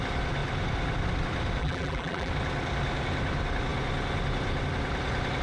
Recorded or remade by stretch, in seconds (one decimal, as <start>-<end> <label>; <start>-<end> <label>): 0.0-1.6 recorded; 1.6-2.3 remade; 2.3-5.4 recorded